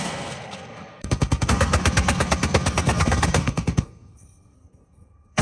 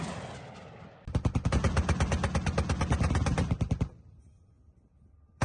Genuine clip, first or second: second